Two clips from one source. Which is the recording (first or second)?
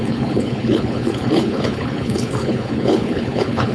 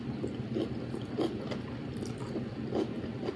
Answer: second